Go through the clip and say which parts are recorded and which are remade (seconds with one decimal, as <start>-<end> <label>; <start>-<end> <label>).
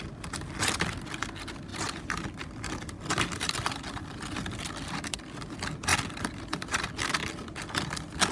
0.0-1.7 recorded; 1.7-4.1 remade; 4.1-5.9 recorded; 5.9-7.2 remade; 7.2-8.3 recorded